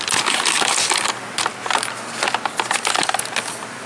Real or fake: real